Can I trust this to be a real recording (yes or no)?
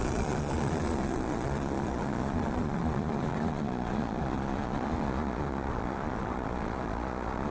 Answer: no